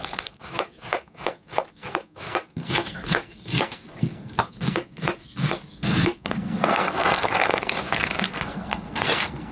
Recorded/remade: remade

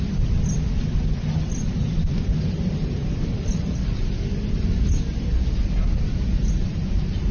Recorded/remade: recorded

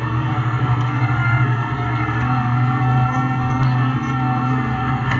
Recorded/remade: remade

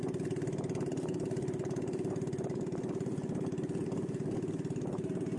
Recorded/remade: recorded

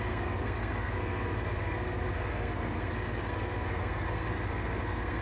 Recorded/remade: remade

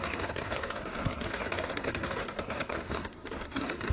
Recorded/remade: remade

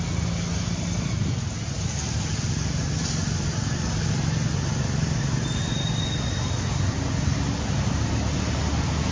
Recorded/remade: recorded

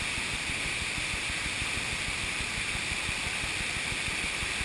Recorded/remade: recorded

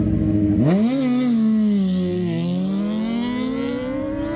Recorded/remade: recorded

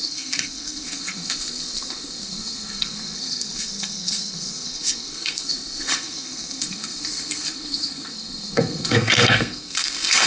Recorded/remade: remade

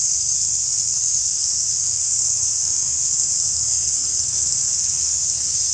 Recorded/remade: remade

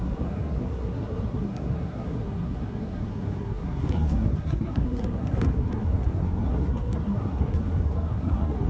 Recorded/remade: remade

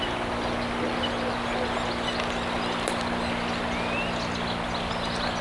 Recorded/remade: recorded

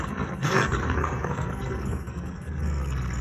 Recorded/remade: remade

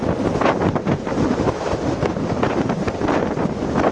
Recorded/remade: recorded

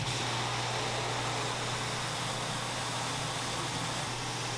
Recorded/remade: recorded